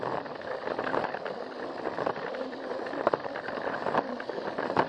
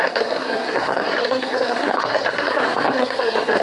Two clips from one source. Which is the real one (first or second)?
first